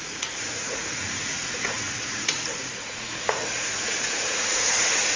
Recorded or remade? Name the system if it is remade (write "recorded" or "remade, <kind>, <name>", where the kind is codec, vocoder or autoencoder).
remade, vocoder, Vocos